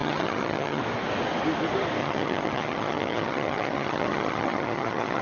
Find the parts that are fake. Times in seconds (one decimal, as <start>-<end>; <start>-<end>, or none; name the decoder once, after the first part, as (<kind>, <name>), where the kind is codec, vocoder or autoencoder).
0.0-0.8 (vocoder, HiFi-GAN); 2.0-5.2